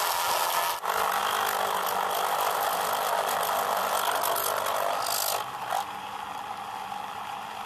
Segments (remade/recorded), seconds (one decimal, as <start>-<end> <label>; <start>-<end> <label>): 0.0-7.7 recorded